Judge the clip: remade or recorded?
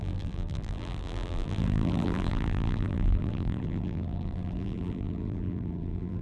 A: remade